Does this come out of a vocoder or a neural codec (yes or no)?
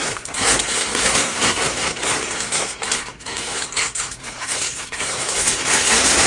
yes